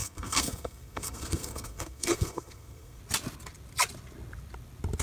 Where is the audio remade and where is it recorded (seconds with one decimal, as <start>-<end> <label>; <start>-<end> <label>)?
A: 0.0-3.0 remade; 3.0-5.0 recorded